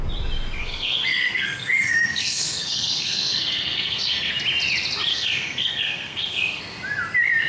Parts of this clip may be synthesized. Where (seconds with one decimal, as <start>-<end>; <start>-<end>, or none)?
0.6-4.3; 5.1-6.6